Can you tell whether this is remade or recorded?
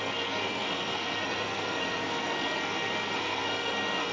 remade